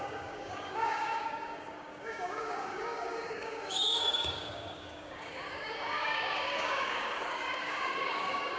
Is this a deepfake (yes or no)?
yes